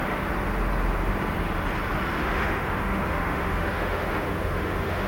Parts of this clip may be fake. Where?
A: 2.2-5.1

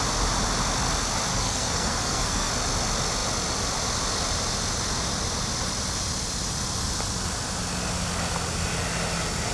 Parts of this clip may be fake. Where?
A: 1.3-2.5

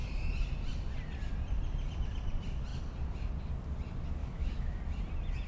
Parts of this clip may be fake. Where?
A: 4.2-4.8